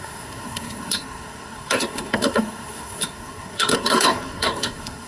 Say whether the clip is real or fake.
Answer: fake